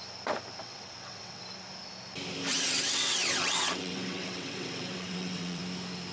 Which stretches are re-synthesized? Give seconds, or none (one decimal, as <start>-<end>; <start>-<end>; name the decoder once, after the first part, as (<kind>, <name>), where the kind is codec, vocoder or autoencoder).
0.6-1.4 (vocoder, WaveNeXt); 2.5-5.6

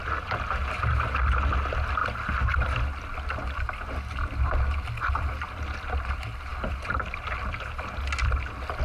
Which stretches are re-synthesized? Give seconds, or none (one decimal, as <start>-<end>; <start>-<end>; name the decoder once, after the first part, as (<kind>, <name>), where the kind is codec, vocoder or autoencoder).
none

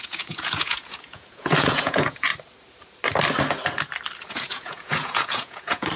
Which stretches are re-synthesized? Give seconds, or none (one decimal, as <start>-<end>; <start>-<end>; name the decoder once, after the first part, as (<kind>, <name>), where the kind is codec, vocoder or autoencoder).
0.0-2.3 (vocoder, Vocos); 4.2-6.0

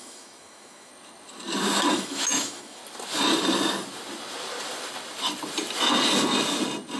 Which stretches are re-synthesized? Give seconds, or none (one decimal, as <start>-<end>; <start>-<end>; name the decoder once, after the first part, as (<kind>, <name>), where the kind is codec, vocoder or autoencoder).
0.0-0.9 (autoencoder, DAC-VAE); 1.9-2.8

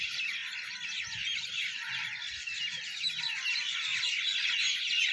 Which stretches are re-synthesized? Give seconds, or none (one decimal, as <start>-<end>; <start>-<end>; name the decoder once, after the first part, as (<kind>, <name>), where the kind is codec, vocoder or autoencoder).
0.4-3.2 (vocoder, BigVGAN v2); 3.9-4.5

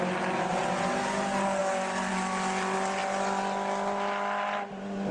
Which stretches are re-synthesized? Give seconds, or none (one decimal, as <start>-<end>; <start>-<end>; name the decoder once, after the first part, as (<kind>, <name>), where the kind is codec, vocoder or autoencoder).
none